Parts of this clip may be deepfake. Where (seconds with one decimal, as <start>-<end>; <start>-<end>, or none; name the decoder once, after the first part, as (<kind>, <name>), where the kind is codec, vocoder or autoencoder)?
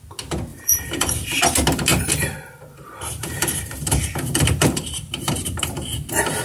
0.5-1.4 (vocoder, BigVGAN v2); 1.9-5.7